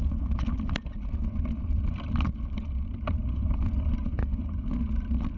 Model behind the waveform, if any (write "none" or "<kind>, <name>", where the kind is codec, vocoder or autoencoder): none